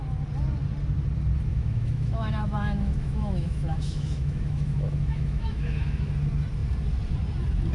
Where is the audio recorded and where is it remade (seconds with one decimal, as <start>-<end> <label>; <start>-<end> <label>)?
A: 0.0-1.5 recorded; 1.5-6.1 remade; 6.1-7.7 recorded